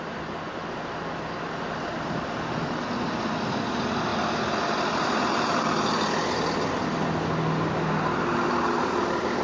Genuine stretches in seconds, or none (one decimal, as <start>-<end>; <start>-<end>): 0.0-9.4